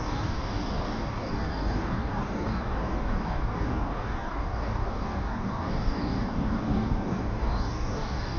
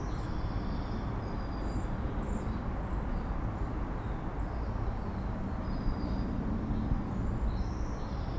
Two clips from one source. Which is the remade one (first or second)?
first